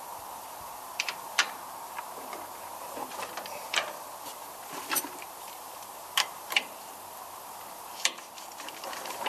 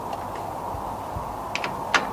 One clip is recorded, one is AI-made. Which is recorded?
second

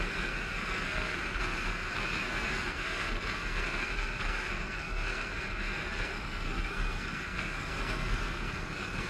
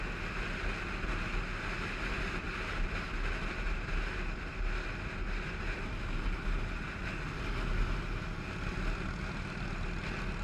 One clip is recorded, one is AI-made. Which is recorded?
second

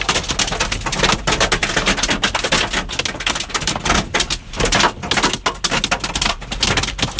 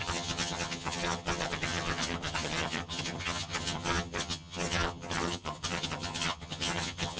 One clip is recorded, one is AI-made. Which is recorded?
first